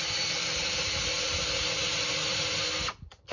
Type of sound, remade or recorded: recorded